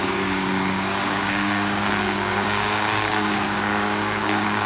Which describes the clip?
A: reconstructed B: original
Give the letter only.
A